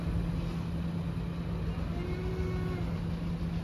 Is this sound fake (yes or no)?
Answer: no